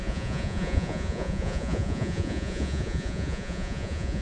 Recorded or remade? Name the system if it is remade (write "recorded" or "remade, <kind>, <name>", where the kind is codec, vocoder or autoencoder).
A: remade, vocoder, Vocos